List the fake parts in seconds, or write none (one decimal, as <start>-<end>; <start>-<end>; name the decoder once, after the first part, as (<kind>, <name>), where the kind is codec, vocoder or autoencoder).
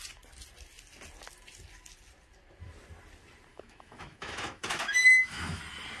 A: 3.5-5.6 (autoencoder, DAC-VAE)